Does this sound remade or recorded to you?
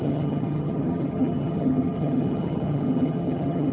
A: remade